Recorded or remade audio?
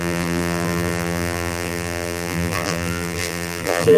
remade